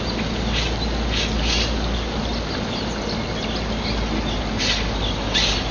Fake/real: real